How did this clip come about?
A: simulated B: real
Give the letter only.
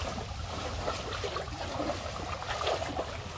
B